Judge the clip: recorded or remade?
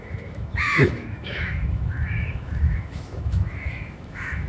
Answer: remade